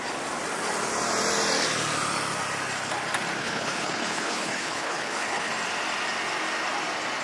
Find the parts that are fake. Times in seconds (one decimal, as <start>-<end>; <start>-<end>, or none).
3.4-5.5